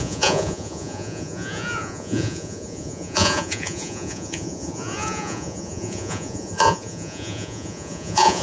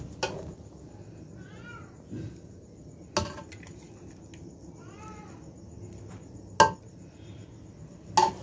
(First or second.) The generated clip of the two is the first